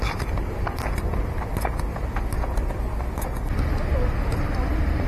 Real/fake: real